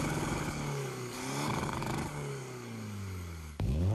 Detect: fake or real fake